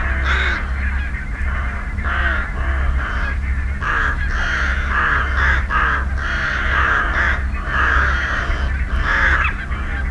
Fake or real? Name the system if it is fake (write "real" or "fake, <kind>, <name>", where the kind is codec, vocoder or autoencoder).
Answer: real